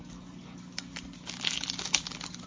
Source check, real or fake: real